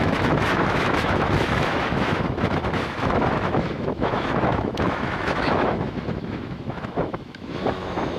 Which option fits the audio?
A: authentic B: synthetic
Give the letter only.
B